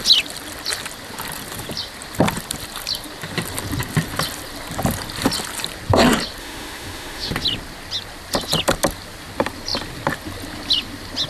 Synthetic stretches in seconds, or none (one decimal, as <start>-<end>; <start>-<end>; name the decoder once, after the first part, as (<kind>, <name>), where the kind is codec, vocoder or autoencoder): 6.4-7.3 (autoencoder, DAC-VAE)